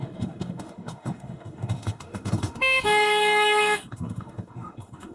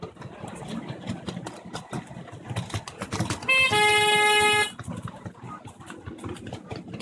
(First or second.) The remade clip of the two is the first